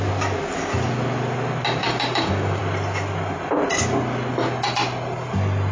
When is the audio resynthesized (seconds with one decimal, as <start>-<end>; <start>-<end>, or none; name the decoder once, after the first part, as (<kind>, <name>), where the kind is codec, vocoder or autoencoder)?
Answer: 1.8-2.6 (codec, DAC)

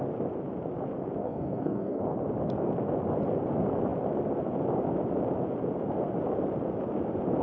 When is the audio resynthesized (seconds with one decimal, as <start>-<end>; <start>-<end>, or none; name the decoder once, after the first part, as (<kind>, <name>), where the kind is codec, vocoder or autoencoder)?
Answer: 1.2-2.0 (codec, DAC)

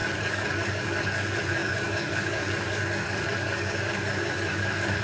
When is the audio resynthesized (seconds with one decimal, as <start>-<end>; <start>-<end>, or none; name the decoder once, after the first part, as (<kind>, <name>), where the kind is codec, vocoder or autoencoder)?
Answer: 0.0-5.0 (codec, DAC)

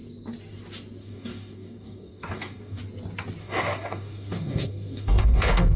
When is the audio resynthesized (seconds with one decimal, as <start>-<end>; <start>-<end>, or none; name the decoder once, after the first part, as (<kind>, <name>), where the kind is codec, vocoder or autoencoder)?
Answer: 1.0-2.8 (codec, DAC); 3.4-5.8